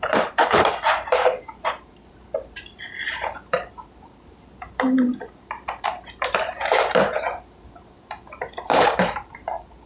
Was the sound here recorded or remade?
remade